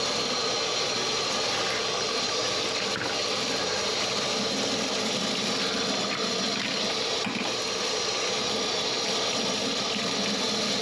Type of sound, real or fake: real